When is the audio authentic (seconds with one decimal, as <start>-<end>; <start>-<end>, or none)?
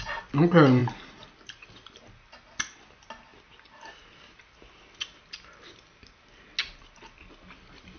0.0-8.0